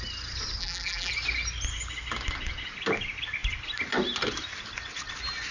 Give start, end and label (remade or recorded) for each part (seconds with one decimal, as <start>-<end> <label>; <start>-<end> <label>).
0.0-0.6 recorded; 0.6-1.1 remade; 1.1-5.5 recorded